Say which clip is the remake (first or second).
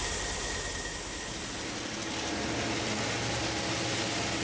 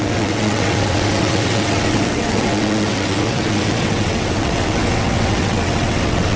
second